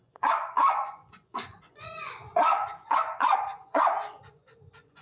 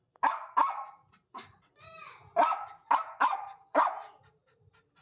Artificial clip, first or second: first